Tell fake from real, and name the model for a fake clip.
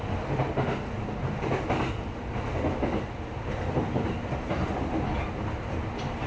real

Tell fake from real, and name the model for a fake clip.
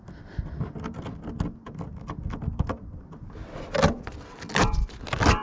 real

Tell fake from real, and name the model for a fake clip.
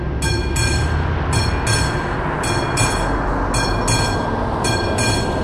real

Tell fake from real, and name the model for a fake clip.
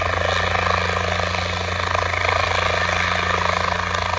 real